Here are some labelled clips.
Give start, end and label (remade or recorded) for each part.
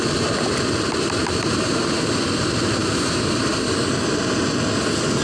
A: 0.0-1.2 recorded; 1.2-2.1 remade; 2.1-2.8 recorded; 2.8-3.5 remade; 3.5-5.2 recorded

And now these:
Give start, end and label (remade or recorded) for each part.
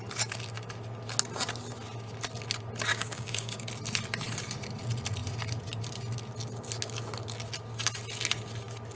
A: 0.0-2.9 recorded; 2.9-3.7 remade; 3.7-9.0 recorded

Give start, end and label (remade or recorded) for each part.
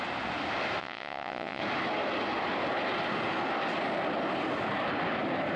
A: 0.0-0.8 recorded; 0.8-1.6 remade; 1.6-5.6 recorded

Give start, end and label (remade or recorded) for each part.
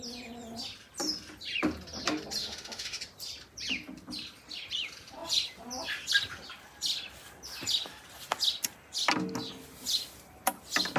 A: 0.0-2.4 recorded; 2.4-3.0 remade; 3.0-11.0 recorded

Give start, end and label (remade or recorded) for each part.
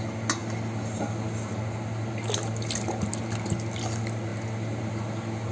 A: 0.0-5.5 recorded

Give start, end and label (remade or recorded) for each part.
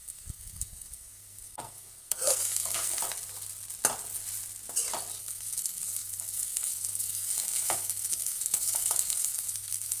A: 0.0-3.0 remade; 3.0-5.2 recorded; 5.2-10.0 remade